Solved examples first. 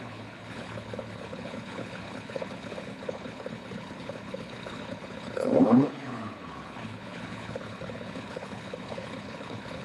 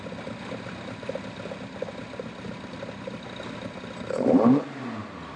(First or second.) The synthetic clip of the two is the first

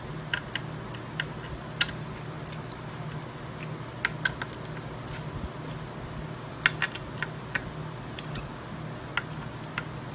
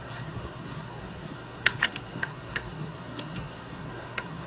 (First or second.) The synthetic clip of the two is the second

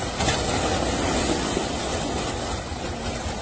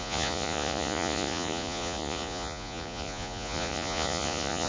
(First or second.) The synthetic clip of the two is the second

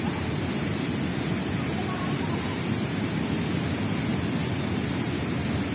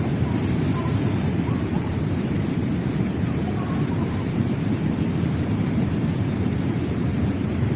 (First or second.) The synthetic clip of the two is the second